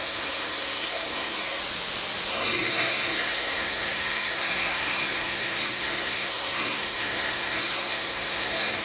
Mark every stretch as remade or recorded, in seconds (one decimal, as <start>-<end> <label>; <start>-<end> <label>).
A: 0.0-1.6 remade; 1.6-2.3 recorded; 2.3-8.8 remade